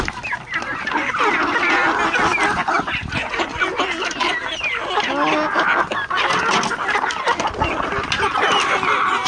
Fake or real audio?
real